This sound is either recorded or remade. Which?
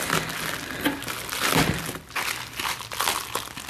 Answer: recorded